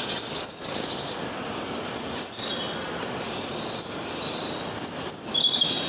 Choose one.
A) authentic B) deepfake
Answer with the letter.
A